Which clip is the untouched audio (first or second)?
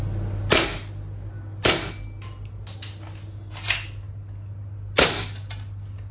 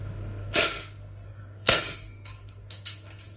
first